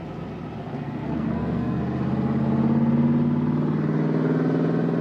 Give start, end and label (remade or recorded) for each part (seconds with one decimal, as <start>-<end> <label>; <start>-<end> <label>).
0.0-0.6 recorded; 0.6-1.8 remade; 1.8-5.0 recorded

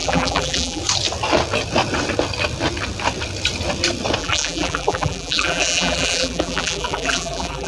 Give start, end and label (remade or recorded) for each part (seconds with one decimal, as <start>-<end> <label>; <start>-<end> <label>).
0.0-0.8 remade; 0.8-4.2 recorded; 4.2-7.7 remade